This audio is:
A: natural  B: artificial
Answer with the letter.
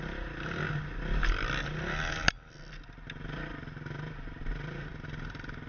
A